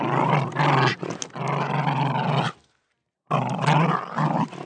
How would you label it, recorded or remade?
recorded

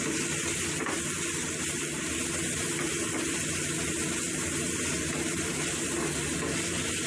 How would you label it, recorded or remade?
recorded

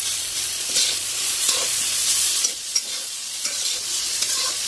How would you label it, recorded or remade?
remade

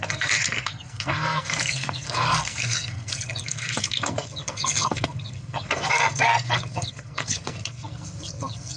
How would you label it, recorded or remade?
remade